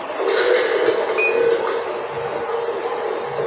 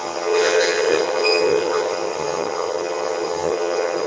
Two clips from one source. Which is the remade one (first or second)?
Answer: second